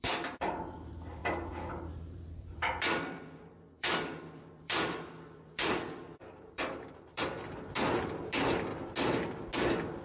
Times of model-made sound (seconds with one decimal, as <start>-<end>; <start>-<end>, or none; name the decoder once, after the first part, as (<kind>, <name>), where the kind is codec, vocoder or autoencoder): 0.0-1.2 (vocoder, BigVGAN v2); 1.9-8.7